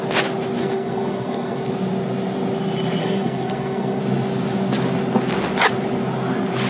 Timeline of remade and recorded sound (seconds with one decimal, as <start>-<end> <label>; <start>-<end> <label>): 0.0-0.6 recorded; 0.6-1.7 remade; 1.7-3.0 recorded; 3.0-4.0 remade; 4.0-6.7 recorded